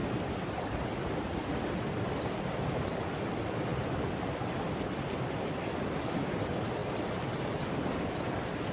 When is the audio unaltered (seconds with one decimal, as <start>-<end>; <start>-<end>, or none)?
0.0-8.7